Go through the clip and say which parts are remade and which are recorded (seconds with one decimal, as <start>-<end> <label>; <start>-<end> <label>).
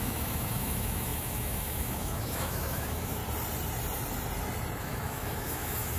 0.0-3.2 remade; 3.2-4.8 recorded; 4.8-6.0 remade